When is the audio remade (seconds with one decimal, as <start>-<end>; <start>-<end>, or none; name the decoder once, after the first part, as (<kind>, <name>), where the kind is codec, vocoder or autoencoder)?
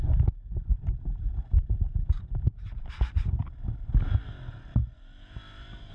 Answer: 0.7-3.4 (vocoder, BigVGAN v2)